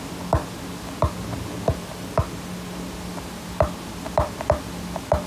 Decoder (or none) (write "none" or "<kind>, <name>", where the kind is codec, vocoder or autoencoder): none